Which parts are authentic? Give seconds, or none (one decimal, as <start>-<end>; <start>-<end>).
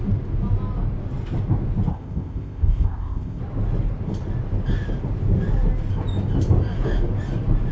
0.0-1.9; 3.4-7.7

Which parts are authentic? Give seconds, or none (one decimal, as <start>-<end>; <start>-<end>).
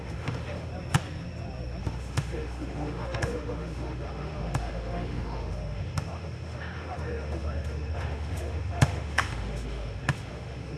0.7-1.8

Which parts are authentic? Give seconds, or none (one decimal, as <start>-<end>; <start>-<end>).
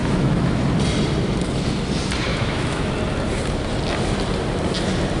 0.6-2.3; 2.9-5.2